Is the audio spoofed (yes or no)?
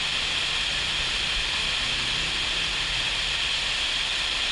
no